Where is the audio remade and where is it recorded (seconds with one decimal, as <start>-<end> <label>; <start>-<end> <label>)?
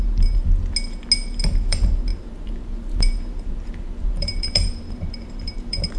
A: 0.0-0.4 remade; 0.4-1.6 recorded; 1.6-6.0 remade